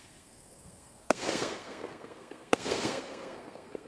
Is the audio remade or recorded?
remade